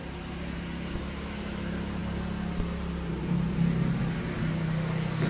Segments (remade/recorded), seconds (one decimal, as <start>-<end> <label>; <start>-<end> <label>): 0.0-5.3 recorded